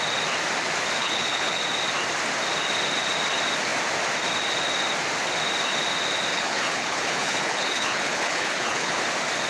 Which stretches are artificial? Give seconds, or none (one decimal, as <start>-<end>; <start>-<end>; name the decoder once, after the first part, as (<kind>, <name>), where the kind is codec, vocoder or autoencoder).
1.0-1.6 (codec, HILCodec); 6.3-9.0